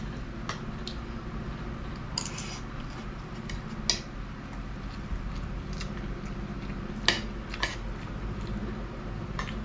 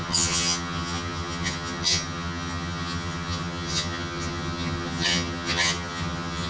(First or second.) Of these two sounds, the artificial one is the second